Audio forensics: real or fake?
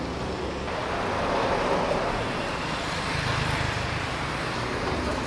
real